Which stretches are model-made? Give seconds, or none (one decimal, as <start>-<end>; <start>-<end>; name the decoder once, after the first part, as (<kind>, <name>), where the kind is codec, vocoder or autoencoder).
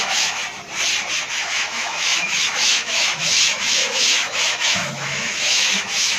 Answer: 0.0-0.4 (autoencoder, DAC-VAE); 1.3-6.2